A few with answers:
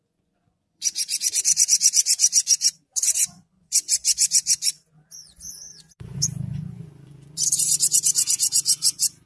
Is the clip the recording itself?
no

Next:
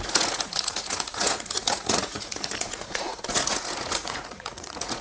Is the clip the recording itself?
no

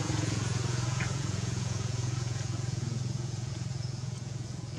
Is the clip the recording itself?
no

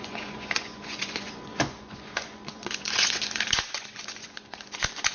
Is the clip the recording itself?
no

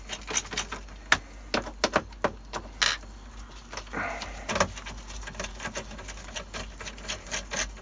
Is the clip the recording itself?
yes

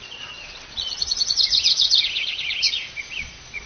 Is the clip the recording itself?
no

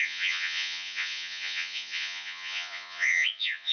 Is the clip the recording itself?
no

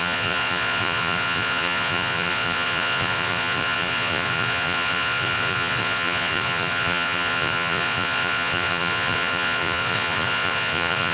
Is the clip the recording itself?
no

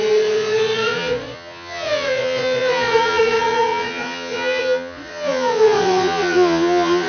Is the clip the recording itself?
no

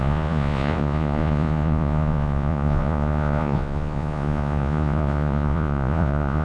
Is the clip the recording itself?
no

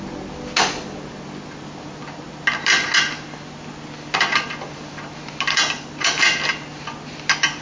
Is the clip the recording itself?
yes